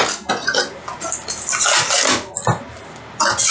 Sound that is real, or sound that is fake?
real